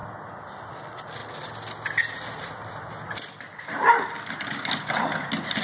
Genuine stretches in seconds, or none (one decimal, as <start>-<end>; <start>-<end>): 0.0-5.6

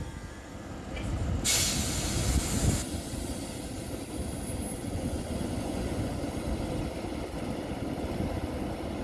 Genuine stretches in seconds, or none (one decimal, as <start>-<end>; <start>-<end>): 0.0-4.8; 6.1-9.0

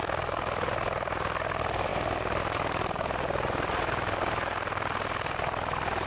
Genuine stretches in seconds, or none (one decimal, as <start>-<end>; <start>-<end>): none

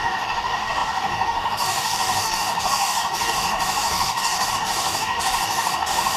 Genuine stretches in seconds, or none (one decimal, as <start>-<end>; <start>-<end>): none